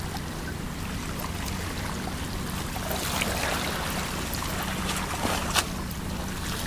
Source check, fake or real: real